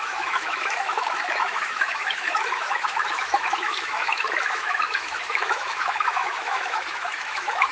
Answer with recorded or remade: remade